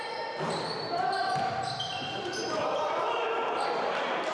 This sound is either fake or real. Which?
fake